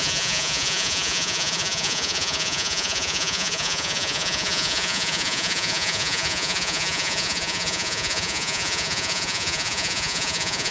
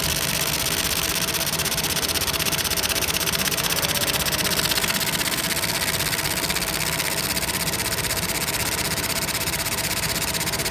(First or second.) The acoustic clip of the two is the second